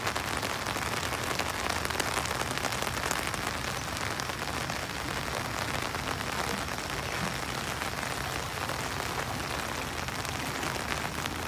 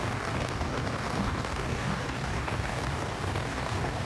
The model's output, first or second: second